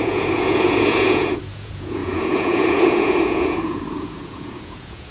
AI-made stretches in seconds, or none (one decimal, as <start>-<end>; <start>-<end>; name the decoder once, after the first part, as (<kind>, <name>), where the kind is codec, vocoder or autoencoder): 0.0-5.1 (vocoder, Vocos)